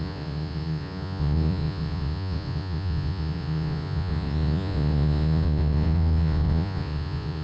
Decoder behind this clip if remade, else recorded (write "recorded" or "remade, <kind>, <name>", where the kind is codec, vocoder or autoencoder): remade, vocoder, Vocos